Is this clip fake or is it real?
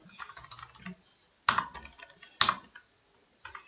real